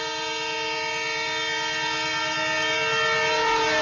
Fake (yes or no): no